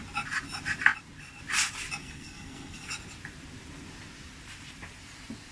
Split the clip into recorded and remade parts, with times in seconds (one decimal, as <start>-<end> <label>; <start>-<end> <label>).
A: 0.0-2.0 recorded; 2.0-2.9 remade; 2.9-5.5 recorded